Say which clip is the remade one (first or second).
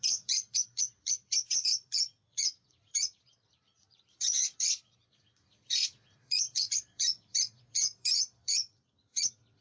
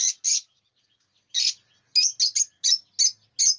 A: first